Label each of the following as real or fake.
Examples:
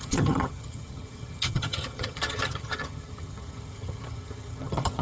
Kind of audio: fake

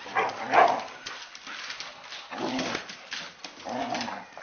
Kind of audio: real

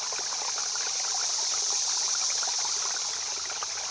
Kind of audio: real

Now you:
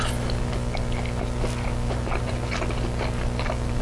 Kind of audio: real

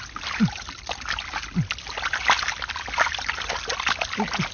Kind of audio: real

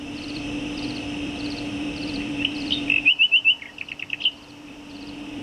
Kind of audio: fake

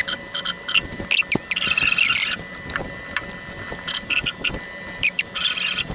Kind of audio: real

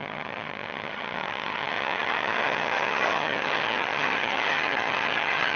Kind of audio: fake